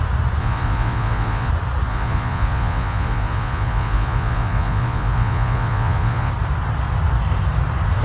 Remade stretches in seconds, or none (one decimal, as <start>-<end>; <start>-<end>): 0.4-1.5; 1.9-6.3